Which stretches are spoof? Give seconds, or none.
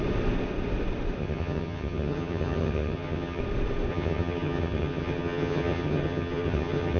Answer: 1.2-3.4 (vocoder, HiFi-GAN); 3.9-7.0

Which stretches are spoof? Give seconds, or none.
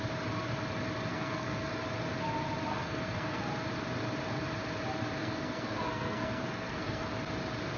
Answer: 1.1-1.7 (codec, SNAC); 2.7-3.5; 5.2-7.1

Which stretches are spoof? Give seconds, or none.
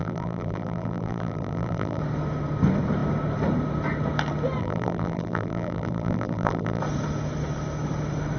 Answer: 0.0-2.0 (vocoder, BigVGAN v2); 4.6-6.8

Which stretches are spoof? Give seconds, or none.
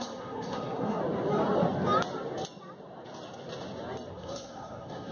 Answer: 0.0-1.0 (codec, SNAC); 4.1-5.1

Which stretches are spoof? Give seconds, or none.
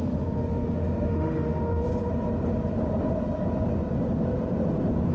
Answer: 0.0-0.4 (autoencoder, DAC-VAE); 1.1-1.9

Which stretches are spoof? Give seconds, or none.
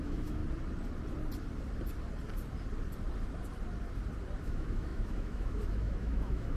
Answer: 0.0-0.4 (autoencoder, DAC-VAE); 4.4-6.6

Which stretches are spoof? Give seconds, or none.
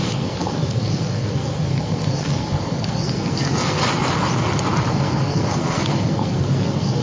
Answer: 0.0-3.8 (codec, SNAC); 4.9-7.0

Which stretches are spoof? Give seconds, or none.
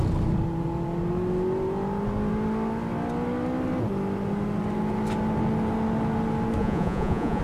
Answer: 6.6-7.4 (vocoder, Vocos)